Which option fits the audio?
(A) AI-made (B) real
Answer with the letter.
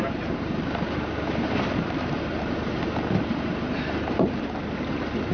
A